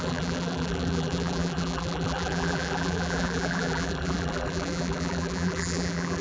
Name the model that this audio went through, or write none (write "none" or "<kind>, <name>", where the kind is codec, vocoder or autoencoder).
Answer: vocoder, BigVGAN v2